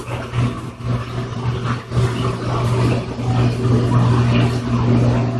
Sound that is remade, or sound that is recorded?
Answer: recorded